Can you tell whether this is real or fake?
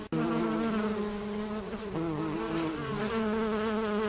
real